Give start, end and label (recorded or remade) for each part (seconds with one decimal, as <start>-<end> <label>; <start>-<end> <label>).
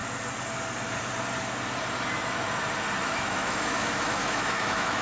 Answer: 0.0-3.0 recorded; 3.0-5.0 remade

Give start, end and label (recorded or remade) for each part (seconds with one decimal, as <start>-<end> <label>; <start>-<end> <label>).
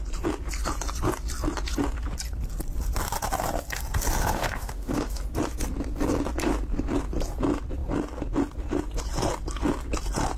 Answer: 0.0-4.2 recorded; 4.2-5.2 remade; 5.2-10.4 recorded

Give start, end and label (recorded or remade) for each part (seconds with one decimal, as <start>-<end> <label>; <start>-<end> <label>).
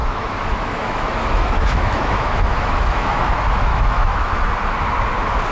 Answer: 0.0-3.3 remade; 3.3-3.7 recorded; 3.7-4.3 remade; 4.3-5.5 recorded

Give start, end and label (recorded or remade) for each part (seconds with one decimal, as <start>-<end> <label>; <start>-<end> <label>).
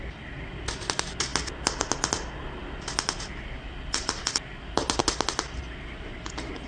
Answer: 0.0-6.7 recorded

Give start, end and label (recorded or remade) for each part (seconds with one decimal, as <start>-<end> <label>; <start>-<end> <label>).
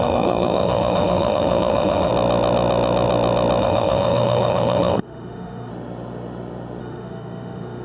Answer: 0.0-2.1 remade; 2.1-3.6 recorded; 3.6-5.7 remade; 5.7-6.8 recorded; 6.8-7.8 remade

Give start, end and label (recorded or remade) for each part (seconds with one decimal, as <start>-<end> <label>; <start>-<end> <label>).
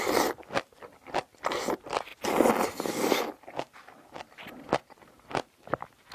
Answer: 0.0-6.1 recorded